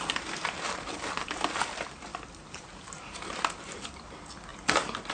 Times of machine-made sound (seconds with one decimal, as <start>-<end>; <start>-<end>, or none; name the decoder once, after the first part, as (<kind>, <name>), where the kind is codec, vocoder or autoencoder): none